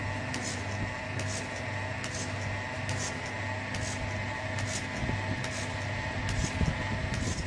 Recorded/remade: recorded